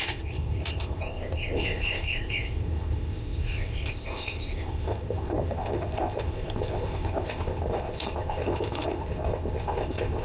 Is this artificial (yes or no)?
yes